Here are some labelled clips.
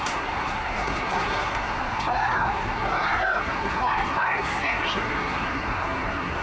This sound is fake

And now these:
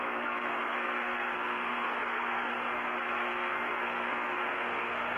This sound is fake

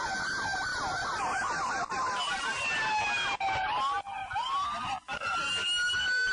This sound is real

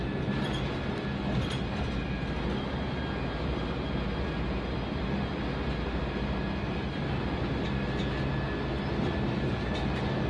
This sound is real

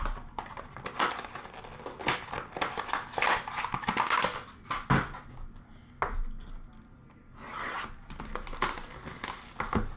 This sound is real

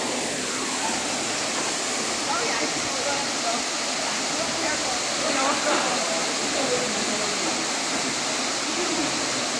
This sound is real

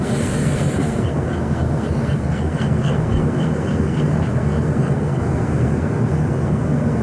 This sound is fake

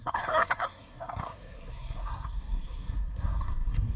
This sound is fake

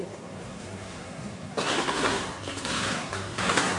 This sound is fake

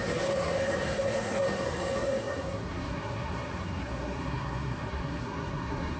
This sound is fake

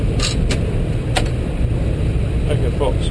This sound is real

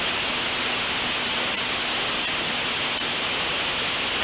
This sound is real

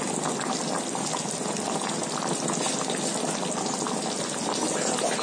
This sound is real